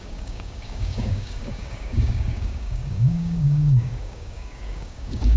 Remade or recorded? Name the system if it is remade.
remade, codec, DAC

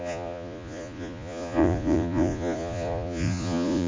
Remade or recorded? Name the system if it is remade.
remade, vocoder, Vocos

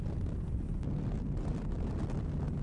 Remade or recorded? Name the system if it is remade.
recorded